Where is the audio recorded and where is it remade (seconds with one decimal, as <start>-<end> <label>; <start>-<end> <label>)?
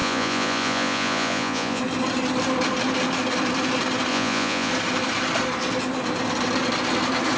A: 0.0-1.8 remade; 1.8-4.1 recorded; 4.1-4.7 remade; 4.7-7.4 recorded